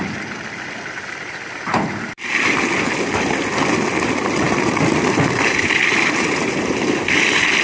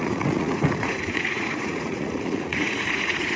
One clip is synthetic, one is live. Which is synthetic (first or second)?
second